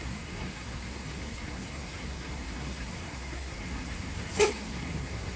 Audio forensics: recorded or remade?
remade